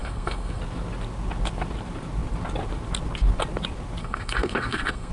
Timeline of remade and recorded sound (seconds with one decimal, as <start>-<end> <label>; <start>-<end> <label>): 0.0-0.6 remade; 0.6-4.0 recorded; 4.0-5.1 remade